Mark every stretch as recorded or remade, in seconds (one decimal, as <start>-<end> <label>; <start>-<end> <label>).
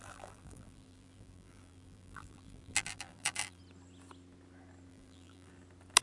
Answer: 0.0-3.6 remade; 3.6-4.9 recorded; 4.9-5.5 remade; 5.5-6.0 recorded